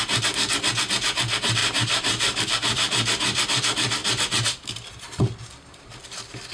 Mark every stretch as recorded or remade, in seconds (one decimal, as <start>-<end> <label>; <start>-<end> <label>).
0.0-1.6 recorded; 1.6-2.4 remade; 2.4-4.0 recorded; 4.0-5.2 remade; 5.2-6.5 recorded